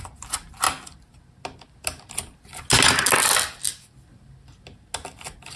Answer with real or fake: real